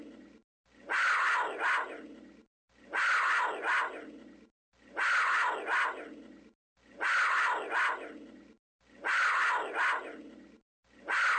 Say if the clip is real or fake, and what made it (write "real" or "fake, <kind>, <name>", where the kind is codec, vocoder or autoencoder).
real